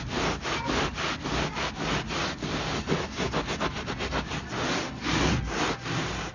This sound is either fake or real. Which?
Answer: real